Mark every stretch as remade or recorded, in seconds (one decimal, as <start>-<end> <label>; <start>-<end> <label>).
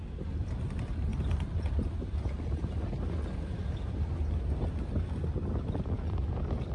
0.0-6.7 recorded